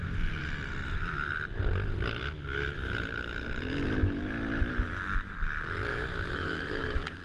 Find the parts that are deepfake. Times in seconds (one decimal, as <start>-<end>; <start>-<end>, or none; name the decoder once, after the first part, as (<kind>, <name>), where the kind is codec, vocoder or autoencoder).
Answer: 5.9-7.2 (autoencoder, DAC-VAE)

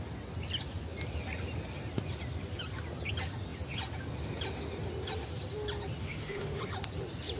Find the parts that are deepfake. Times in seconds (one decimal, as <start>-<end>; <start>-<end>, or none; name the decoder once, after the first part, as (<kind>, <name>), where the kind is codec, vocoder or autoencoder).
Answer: 6.0-6.6 (autoencoder, DAC-VAE)